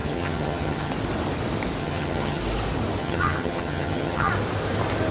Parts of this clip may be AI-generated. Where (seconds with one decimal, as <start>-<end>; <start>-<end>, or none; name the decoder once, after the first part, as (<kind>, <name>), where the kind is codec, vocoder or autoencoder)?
0.0-0.9 (vocoder, HiFi-GAN); 1.8-2.4; 3.0-4.3